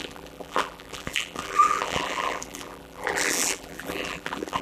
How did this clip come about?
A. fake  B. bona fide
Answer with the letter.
A